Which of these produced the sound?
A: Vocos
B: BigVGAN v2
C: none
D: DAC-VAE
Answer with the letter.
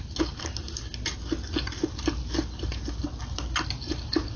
C